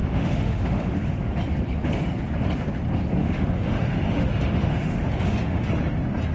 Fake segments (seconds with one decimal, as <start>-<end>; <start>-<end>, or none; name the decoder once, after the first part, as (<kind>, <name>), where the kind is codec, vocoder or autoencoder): 0.0-1.4 (autoencoder, DAC-VAE); 3.2-5.7